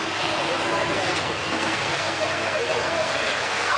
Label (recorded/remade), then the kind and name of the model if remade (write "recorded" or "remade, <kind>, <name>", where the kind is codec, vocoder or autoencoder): remade, codec, SNAC